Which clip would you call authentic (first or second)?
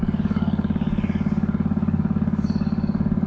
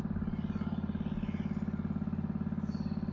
second